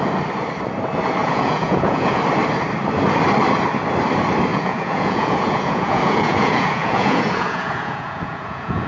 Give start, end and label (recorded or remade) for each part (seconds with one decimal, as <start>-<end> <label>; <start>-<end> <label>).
0.0-1.2 recorded; 1.2-2.2 remade; 2.2-4.5 recorded; 4.5-8.9 remade